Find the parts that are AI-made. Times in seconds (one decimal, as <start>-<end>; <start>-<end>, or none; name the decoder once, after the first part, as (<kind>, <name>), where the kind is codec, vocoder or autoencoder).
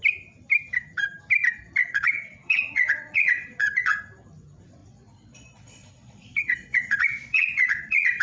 1.8-4.0 (vocoder, Vocos); 4.8-8.2